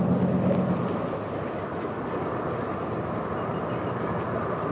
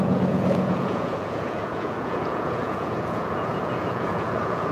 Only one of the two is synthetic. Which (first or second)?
second